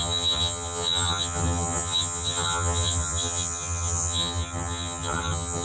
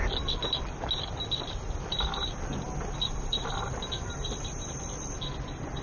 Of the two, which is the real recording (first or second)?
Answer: second